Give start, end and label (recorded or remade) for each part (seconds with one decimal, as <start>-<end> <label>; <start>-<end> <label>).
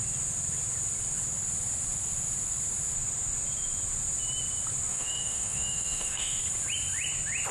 0.0-4.9 recorded; 4.9-6.4 remade; 6.4-7.5 recorded